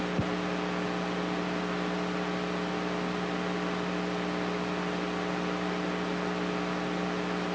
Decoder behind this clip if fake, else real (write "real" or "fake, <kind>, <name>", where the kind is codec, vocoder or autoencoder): real